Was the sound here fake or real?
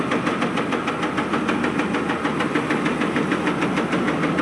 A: real